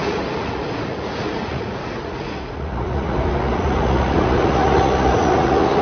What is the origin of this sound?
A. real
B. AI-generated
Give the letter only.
B